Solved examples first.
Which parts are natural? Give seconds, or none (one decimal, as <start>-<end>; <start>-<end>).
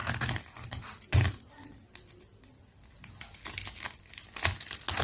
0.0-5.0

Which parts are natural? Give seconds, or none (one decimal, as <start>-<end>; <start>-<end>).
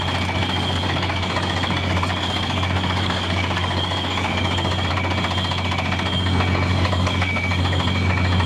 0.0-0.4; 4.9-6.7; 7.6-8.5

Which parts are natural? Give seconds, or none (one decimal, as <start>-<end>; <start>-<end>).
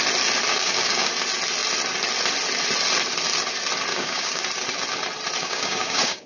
0.0-0.5; 1.1-3.9; 4.4-5.4